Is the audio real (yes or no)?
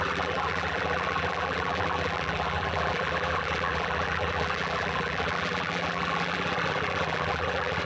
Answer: no